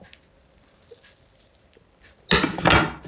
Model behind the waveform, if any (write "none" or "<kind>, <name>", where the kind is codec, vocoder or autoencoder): none